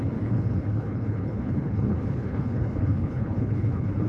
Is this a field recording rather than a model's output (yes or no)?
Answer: no